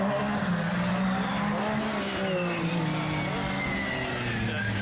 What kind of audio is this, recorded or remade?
recorded